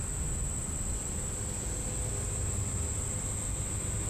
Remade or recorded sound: recorded